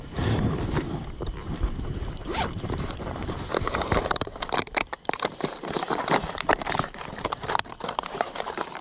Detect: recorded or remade remade